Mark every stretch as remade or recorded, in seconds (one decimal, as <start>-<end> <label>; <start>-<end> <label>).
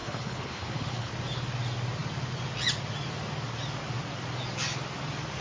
0.0-1.1 remade; 1.1-5.4 recorded